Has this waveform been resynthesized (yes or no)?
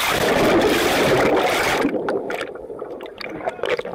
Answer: no